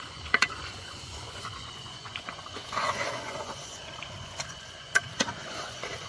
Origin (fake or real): fake